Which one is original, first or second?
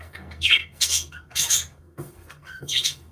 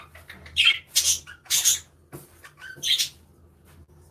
second